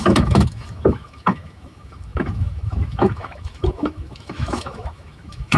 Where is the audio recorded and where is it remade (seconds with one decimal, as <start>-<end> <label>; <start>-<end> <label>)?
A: 0.0-5.6 remade